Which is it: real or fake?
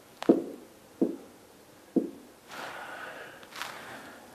real